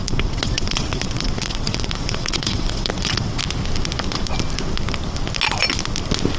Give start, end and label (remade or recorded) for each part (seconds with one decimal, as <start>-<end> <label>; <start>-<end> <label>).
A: 0.0-3.4 remade; 3.4-6.4 recorded

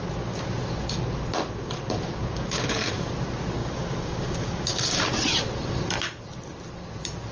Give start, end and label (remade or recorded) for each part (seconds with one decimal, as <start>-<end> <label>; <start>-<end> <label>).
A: 0.0-2.2 recorded; 2.2-2.8 remade; 2.8-3.6 recorded; 3.6-5.0 remade; 5.0-7.3 recorded

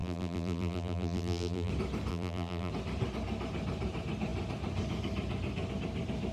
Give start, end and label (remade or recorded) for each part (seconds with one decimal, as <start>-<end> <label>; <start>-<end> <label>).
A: 0.0-1.7 remade; 1.7-2.1 recorded; 2.1-2.7 remade; 2.7-6.3 recorded

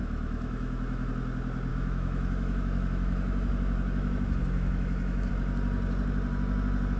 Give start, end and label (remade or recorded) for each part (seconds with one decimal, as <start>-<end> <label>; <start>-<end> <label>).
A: 0.0-1.1 remade; 1.1-1.7 recorded; 1.7-5.3 remade; 5.3-7.0 recorded

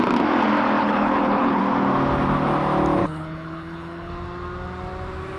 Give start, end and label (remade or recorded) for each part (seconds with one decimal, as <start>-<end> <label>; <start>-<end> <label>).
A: 0.0-0.8 recorded; 0.8-1.6 remade; 1.6-3.0 recorded; 3.0-4.1 remade; 4.1-5.4 recorded

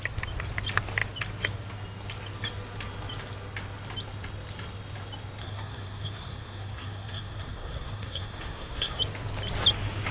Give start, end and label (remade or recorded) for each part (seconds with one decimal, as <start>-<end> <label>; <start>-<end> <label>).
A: 0.0-5.4 recorded; 5.4-9.0 remade; 9.0-10.1 recorded

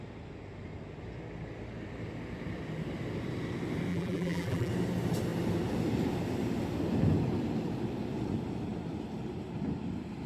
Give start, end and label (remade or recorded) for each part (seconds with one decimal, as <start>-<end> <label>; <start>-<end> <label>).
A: 0.0-3.9 recorded; 3.9-4.7 remade; 4.7-10.3 recorded

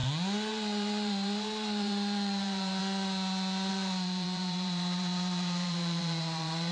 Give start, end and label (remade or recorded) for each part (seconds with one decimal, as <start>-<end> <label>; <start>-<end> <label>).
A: 0.0-0.5 recorded; 0.5-2.8 remade; 2.8-3.7 recorded; 3.7-6.7 remade